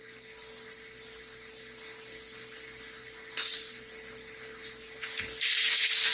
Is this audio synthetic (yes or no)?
no